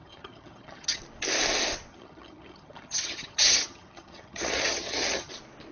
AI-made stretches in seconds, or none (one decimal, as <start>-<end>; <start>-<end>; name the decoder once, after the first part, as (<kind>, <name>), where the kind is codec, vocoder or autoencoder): 0.0-1.0 (vocoder, HiFi-GAN); 1.9-5.3